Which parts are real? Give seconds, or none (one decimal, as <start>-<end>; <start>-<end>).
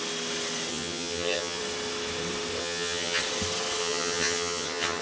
0.0-0.7; 1.6-2.6; 3.2-3.8